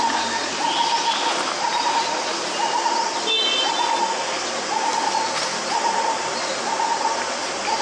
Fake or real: real